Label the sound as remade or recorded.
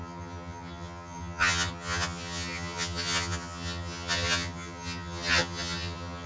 remade